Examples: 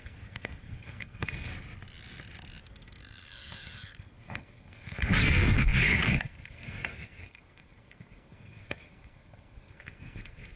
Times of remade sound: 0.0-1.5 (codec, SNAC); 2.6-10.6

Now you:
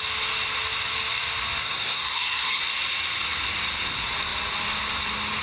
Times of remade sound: 1.6-2.6 (codec, SNAC)

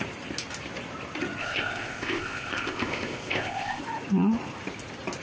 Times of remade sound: 1.4-3.8 (codec, ZipCodec)

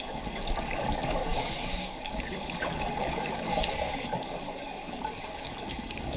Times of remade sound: 0.0-6.2 (codec, DAC)

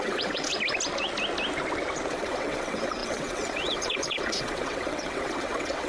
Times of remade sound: 0.0-0.5 (vocoder, WaveNeXt); 2.1-5.9

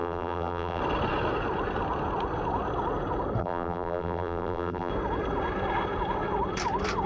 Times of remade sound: 0.0-0.8 (vocoder, BigVGAN v2); 3.4-4.9